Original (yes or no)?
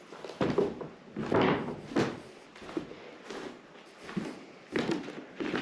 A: yes